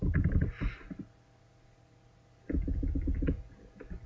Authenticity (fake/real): real